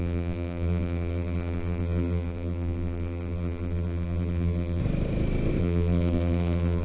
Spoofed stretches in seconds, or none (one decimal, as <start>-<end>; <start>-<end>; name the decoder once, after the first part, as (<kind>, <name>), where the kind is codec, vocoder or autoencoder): 0.0-4.8 (vocoder, BigVGAN v2); 5.6-6.8